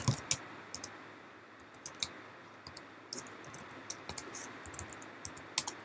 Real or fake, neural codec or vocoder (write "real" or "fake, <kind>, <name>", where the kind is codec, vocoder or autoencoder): real